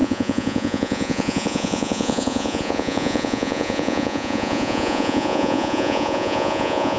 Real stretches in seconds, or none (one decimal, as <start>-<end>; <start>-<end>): none